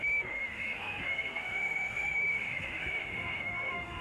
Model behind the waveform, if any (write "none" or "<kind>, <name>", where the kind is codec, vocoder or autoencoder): autoencoder, DAC-VAE